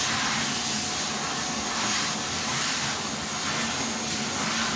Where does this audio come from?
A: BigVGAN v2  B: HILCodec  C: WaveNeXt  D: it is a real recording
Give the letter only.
D